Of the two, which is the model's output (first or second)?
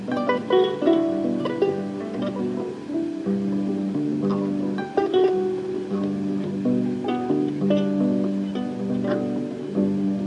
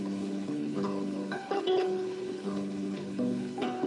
second